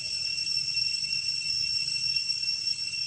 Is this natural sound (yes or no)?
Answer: yes